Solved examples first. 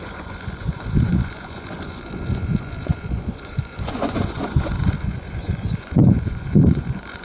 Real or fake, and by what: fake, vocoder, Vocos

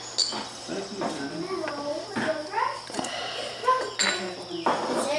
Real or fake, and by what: real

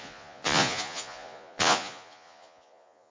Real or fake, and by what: fake, vocoder, Vocos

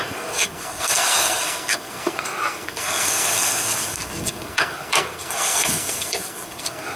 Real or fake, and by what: fake, codec, SNAC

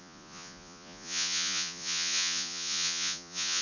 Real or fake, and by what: fake, vocoder, Vocos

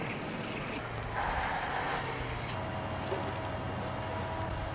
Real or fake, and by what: real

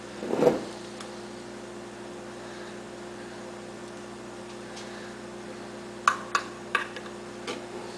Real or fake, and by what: real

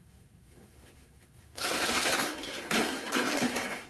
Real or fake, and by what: fake, codec, SNAC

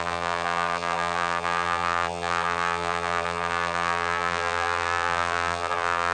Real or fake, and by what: fake, vocoder, BigVGAN v2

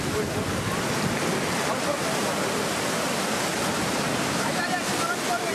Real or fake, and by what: real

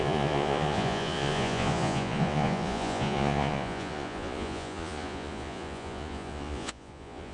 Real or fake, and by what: fake, vocoder, Vocos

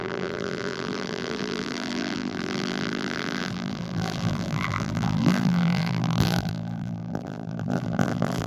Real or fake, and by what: fake, vocoder, BigVGAN v2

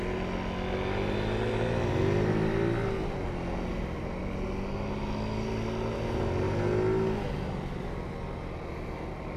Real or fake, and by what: real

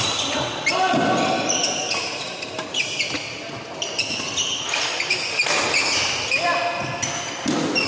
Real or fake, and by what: real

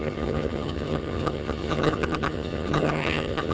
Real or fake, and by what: fake, vocoder, HiFi-GAN